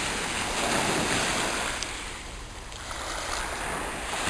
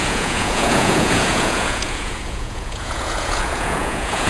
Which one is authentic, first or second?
first